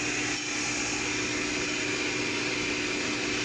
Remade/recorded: recorded